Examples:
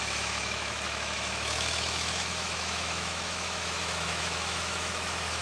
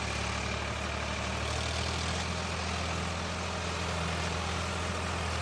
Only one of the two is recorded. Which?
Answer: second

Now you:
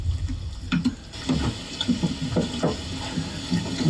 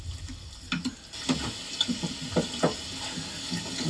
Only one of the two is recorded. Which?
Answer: second